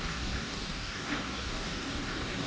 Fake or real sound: fake